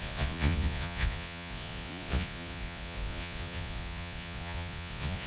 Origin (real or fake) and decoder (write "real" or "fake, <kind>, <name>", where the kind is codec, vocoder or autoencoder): fake, vocoder, Vocos